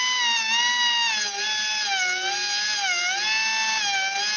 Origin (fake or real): real